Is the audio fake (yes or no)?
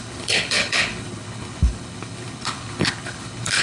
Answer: yes